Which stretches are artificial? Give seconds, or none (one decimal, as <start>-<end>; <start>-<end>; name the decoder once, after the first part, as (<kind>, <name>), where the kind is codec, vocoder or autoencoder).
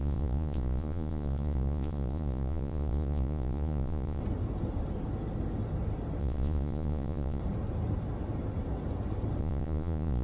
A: 0.0-4.2 (vocoder, Vocos); 6.2-7.4; 9.4-10.2